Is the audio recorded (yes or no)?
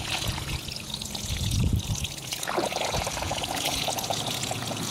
no